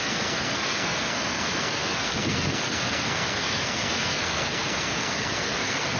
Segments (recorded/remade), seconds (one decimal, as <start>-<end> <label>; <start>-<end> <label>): 0.0-6.0 remade